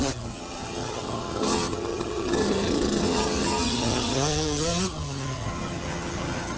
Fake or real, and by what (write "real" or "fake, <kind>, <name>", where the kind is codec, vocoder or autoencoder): fake, vocoder, HiFi-GAN